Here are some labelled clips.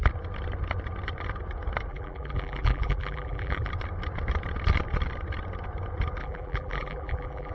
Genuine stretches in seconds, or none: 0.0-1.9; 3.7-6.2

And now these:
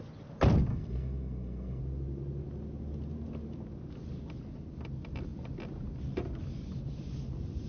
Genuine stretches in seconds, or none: 0.0-0.7; 1.8-7.7